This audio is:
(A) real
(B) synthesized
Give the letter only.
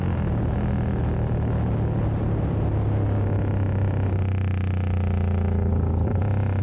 A